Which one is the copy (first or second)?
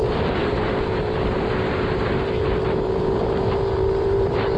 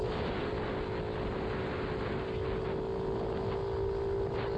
first